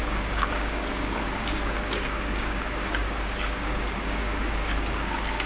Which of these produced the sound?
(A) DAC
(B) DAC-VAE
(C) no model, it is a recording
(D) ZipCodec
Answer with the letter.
A